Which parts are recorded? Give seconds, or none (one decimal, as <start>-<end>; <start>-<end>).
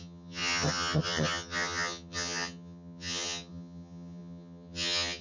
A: none